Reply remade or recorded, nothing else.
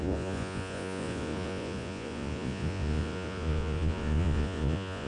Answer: remade